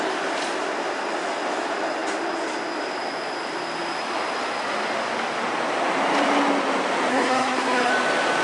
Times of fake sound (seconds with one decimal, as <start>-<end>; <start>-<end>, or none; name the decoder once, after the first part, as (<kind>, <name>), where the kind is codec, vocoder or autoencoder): 7.1-7.9 (codec, SNAC)